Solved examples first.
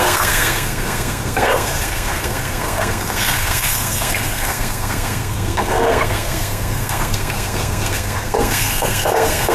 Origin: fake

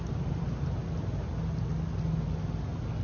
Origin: real